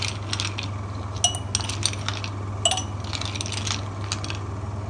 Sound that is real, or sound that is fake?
real